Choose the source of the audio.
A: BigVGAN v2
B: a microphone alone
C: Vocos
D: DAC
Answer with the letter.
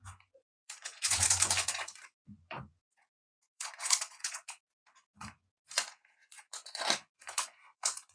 C